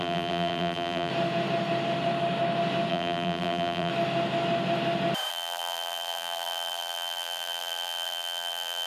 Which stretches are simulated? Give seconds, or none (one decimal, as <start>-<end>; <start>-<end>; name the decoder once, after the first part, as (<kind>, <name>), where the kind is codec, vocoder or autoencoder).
0.0-1.1 (vocoder, BigVGAN v2); 2.9-3.9; 5.3-8.9